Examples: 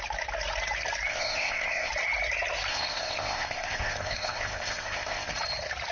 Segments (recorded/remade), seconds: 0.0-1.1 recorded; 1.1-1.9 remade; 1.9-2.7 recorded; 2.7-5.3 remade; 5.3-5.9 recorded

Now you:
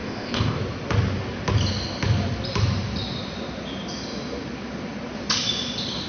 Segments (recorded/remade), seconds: 0.0-0.6 remade; 0.6-6.1 recorded

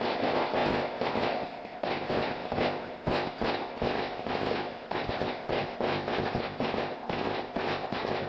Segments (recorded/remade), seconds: 0.0-8.3 remade

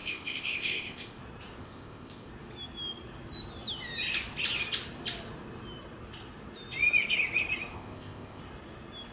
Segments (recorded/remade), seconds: 0.0-1.2 remade; 1.2-1.6 recorded; 1.6-2.3 remade; 2.3-7.7 recorded; 7.7-8.4 remade; 8.4-9.1 recorded

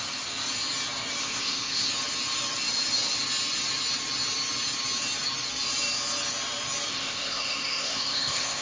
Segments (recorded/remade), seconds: 0.0-1.2 recorded; 1.2-1.9 remade; 1.9-6.9 recorded; 6.9-8.6 remade

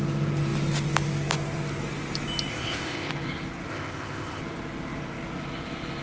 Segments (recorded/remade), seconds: 0.0-2.5 recorded; 2.5-3.1 remade; 3.1-3.7 recorded; 3.7-4.4 remade; 4.4-6.0 recorded

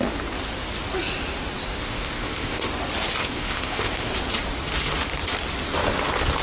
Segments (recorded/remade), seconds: 0.0-1.8 recorded; 1.8-2.7 remade; 2.7-3.2 recorded; 3.2-4.1 remade; 4.1-6.4 recorded